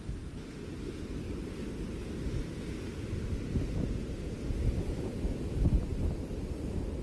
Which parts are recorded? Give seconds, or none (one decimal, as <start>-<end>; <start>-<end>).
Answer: 0.0-7.0